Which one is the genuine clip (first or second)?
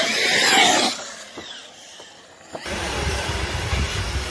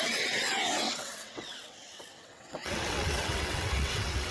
first